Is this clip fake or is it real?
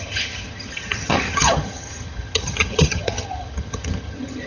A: fake